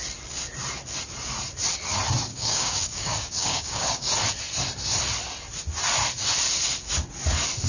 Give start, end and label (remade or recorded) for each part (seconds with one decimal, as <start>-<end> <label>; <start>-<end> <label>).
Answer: 0.0-2.3 recorded; 2.3-4.1 remade; 4.1-7.7 recorded